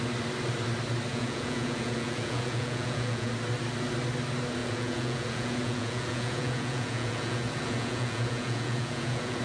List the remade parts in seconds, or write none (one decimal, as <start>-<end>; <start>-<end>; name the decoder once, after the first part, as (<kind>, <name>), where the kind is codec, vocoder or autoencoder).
1.1-3.3 (vocoder, Vocos); 4.6-9.4